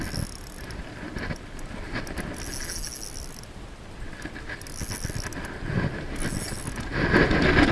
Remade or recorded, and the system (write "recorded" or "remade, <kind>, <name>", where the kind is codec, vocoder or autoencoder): recorded